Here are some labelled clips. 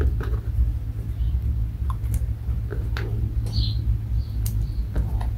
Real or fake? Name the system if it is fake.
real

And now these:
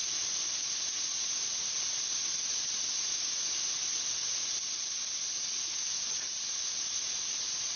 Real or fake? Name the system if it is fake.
real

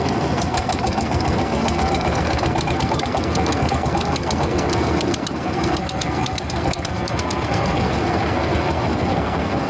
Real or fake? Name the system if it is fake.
fake, codec, SNAC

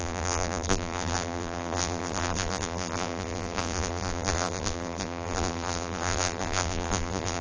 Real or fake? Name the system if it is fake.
fake, vocoder, BigVGAN v2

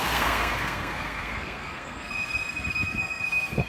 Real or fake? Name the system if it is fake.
fake, codec, SNAC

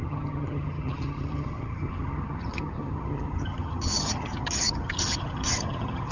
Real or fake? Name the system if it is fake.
fake, vocoder, HiFi-GAN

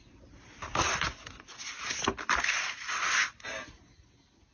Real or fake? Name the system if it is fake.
real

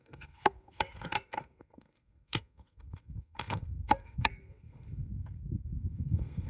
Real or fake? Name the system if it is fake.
fake, codec, SNAC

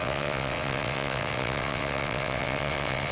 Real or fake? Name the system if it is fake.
fake, vocoder, WaveNeXt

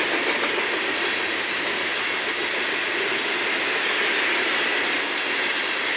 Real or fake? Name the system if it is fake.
real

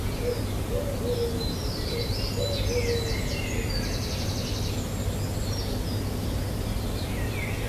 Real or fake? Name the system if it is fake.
real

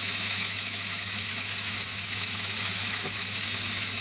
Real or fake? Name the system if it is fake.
fake, autoencoder, DAC-VAE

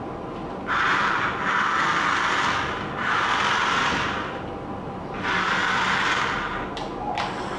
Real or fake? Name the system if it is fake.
real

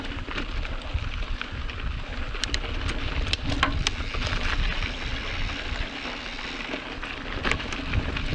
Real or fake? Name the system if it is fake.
real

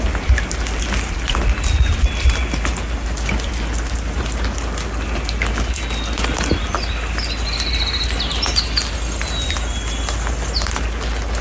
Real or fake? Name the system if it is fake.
real